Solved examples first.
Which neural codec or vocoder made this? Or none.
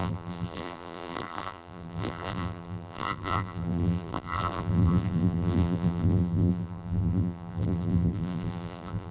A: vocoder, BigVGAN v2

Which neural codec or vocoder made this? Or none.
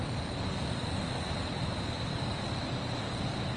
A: none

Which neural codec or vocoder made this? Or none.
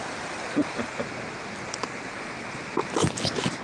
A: none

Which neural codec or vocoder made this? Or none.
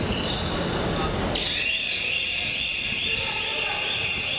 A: none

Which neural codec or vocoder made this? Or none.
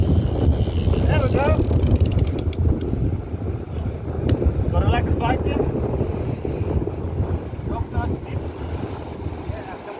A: none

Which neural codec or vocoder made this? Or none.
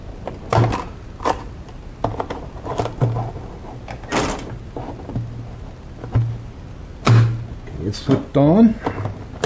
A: none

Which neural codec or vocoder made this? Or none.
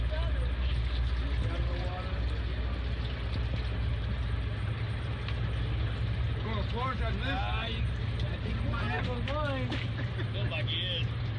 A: none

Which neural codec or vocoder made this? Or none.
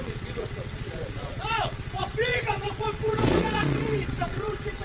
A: vocoder, WaveNeXt